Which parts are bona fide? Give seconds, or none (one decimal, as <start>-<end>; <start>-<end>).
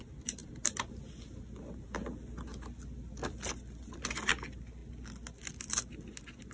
0.0-6.5